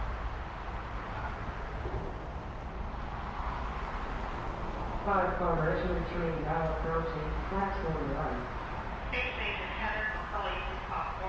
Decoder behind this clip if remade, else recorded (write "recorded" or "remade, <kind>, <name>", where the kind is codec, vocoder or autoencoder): recorded